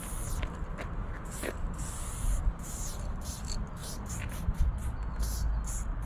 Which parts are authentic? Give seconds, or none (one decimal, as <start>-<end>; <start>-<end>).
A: 0.0-3.8; 4.6-6.1